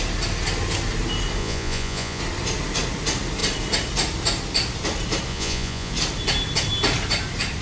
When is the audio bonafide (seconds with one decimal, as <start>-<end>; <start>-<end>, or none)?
0.0-1.4; 2.2-5.3; 5.9-7.6